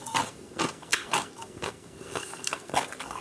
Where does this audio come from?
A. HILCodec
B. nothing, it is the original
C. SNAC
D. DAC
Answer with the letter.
C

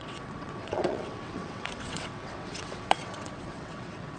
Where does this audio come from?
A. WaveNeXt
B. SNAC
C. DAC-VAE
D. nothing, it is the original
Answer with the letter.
A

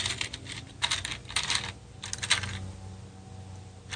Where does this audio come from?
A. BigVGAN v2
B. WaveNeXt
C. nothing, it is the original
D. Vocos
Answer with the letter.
C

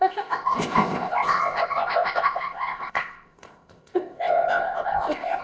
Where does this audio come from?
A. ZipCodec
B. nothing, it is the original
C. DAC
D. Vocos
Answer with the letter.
A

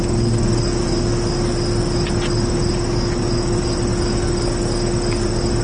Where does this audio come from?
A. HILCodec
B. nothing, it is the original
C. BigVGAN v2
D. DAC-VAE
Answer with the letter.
B